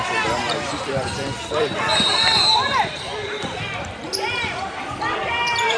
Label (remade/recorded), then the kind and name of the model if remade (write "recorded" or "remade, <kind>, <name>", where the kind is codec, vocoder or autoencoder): remade, vocoder, BigVGAN v2